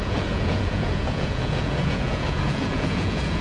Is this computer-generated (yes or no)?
yes